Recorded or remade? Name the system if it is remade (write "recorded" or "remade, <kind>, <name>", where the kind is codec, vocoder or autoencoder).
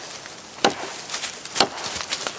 recorded